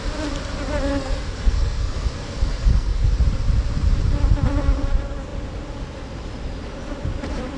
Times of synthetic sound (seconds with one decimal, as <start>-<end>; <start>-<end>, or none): 0.9-3.1